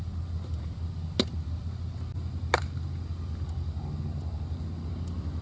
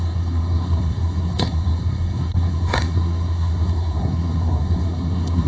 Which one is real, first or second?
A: first